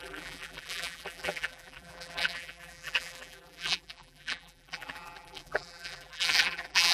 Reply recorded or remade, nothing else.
remade